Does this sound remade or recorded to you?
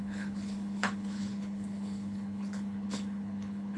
remade